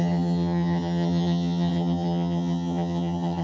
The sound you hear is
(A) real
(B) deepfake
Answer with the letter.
B